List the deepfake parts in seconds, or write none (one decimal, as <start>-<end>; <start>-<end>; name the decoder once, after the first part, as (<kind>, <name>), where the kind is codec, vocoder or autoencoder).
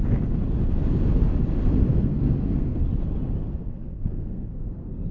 1.9-2.9 (codec, SNAC); 3.6-5.1